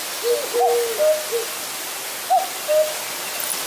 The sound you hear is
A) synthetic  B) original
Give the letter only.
B